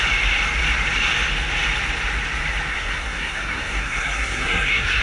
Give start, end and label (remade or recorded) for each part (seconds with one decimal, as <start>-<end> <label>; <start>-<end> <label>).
0.0-2.7 recorded; 2.7-5.0 remade